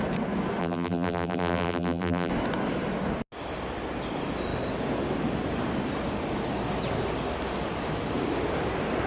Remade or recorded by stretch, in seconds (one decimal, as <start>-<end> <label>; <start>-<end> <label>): 0.0-0.6 recorded; 0.6-2.3 remade; 2.3-9.1 recorded